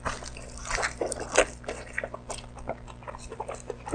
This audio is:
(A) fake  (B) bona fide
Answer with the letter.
B